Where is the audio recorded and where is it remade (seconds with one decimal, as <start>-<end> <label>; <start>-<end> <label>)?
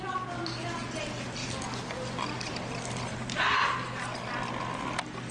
0.0-5.3 recorded